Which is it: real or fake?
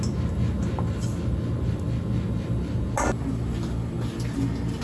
real